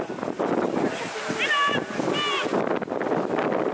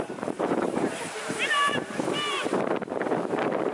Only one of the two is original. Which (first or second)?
first